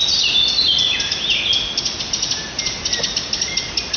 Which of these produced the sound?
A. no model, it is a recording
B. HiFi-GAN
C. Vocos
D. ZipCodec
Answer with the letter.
A